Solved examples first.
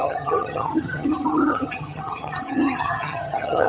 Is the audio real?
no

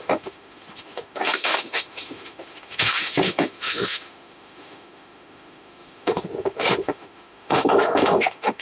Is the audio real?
no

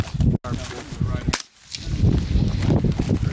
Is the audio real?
yes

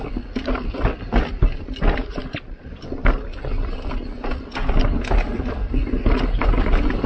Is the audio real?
yes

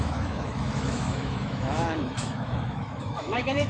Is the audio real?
no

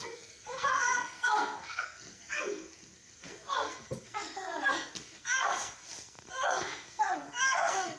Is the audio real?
no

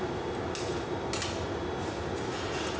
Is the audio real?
yes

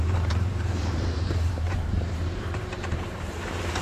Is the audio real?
no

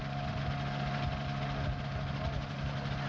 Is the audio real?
yes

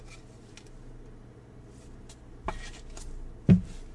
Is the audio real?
yes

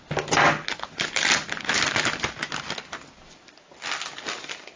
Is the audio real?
yes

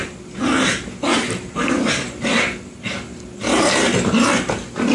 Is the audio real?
yes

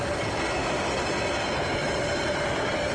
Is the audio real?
yes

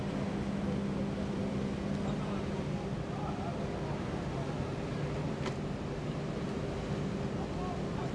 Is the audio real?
yes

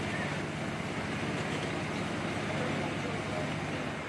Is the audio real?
yes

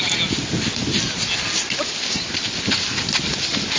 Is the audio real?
yes